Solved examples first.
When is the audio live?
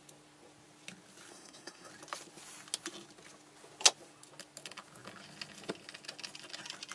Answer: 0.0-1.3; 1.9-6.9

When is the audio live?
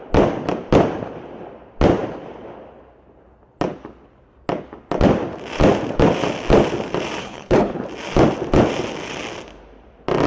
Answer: 0.0-7.2; 7.8-10.3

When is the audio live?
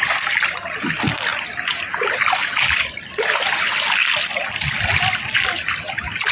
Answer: 0.0-6.3